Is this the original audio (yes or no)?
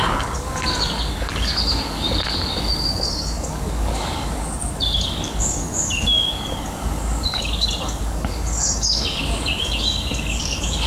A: no